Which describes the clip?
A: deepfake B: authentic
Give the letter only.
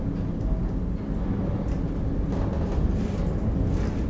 B